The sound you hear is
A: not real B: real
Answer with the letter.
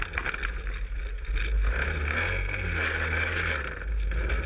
B